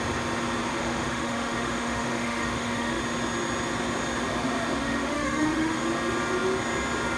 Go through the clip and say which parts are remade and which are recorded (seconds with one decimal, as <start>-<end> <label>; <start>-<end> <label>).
0.0-0.7 recorded; 0.7-3.0 remade; 3.0-4.8 recorded; 4.8-5.8 remade; 5.8-7.2 recorded